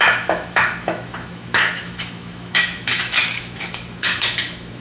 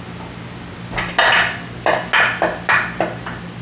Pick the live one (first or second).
second